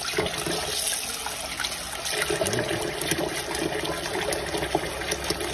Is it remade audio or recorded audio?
recorded